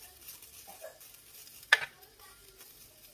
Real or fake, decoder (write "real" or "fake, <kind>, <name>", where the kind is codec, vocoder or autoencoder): real